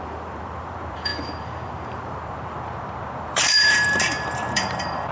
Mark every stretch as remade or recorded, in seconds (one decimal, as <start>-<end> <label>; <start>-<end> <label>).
0.0-5.1 remade